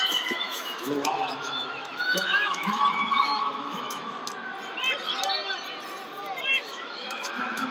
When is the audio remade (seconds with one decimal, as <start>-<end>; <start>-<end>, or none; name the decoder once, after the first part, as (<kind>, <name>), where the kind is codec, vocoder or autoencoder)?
0.0-4.2 (autoencoder, DAC-VAE); 6.4-7.7